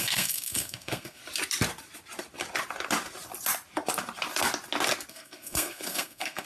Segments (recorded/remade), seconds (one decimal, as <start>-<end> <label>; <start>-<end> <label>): 0.0-1.2 remade; 1.2-5.1 recorded; 5.1-6.5 remade